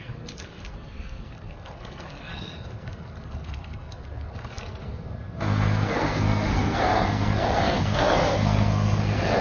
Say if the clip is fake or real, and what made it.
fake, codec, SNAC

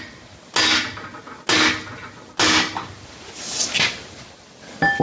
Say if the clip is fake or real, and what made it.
real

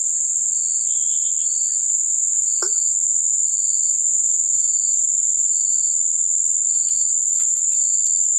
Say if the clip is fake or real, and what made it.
real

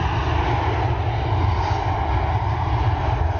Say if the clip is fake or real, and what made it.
real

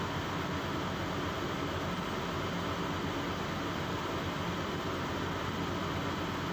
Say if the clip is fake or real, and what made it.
real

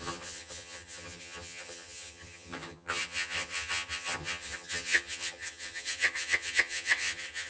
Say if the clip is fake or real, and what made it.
fake, vocoder, HiFi-GAN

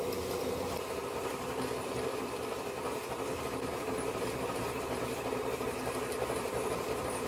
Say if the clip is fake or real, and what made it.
fake, vocoder, BigVGAN v2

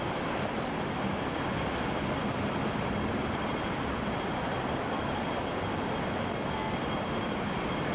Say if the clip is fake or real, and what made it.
real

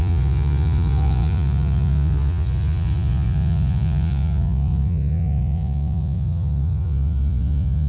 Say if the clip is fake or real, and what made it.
fake, vocoder, Vocos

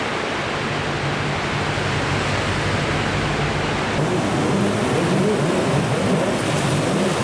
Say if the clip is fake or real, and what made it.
real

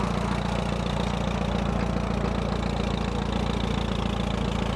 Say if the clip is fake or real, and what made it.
real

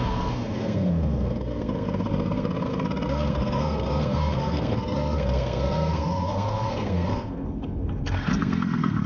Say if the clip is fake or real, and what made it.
fake, codec, SNAC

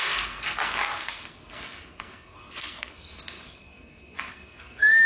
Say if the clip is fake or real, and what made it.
fake, codec, SNAC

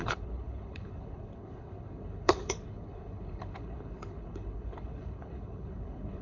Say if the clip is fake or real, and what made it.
fake, codec, HILCodec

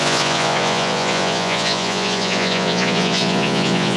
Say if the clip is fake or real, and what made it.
fake, vocoder, Vocos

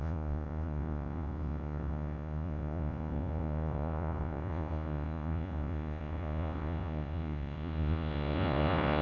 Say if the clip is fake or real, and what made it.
fake, vocoder, Vocos